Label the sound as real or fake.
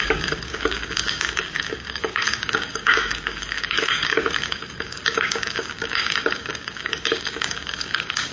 fake